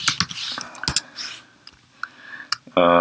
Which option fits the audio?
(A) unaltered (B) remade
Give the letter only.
A